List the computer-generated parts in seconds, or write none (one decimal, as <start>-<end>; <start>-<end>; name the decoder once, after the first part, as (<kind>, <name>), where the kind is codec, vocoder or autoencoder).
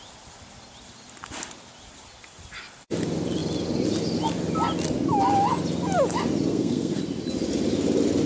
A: 6.5-7.0 (codec, SNAC)